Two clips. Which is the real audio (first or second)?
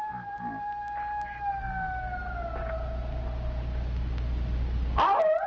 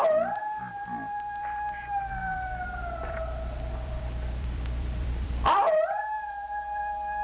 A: first